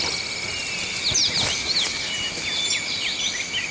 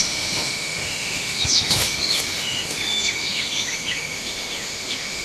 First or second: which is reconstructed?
second